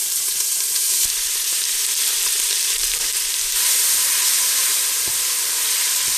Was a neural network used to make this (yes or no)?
yes